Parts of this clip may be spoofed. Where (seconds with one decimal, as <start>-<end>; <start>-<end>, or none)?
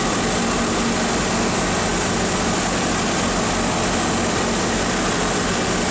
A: none